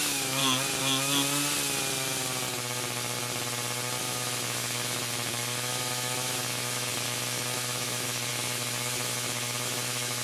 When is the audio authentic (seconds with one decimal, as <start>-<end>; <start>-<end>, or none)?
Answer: 0.4-4.0